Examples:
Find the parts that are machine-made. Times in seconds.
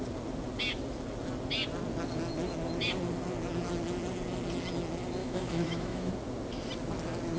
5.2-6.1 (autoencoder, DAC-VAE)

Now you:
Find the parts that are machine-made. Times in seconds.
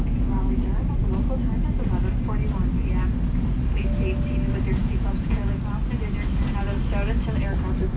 4.8-5.6 (vocoder, Vocos)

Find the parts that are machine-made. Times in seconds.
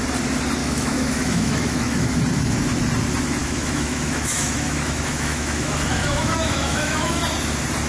0.6-2.1 (autoencoder, DAC-VAE); 3.4-7.2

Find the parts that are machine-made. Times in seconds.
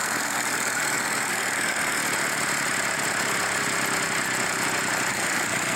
0.0-2.0 (codec, SNAC); 5.1-5.8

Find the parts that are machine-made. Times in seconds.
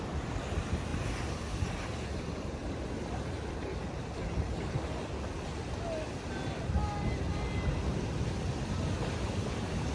0.9-1.7 (vocoder, BigVGAN v2); 2.6-3.9